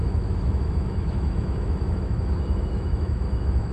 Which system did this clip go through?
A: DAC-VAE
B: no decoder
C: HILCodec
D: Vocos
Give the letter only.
A